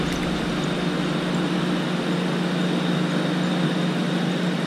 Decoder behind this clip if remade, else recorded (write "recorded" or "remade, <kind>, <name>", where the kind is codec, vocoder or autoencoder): recorded